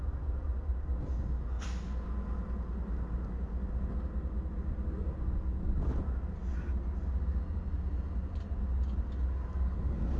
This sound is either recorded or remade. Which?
recorded